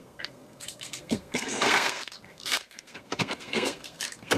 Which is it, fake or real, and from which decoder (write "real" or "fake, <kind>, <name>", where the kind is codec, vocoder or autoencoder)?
fake, codec, SNAC